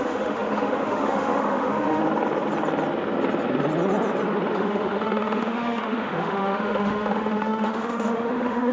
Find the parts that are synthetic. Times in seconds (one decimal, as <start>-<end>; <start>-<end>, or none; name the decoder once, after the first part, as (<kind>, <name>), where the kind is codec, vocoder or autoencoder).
0.0-2.0 (autoencoder, DAC-VAE); 4.5-8.7